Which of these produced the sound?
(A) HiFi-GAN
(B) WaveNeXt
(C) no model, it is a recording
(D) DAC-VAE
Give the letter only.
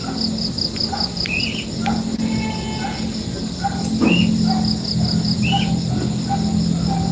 C